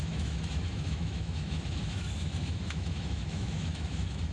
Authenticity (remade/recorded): remade